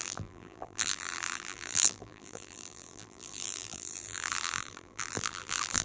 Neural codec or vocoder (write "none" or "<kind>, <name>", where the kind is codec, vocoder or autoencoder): vocoder, BigVGAN v2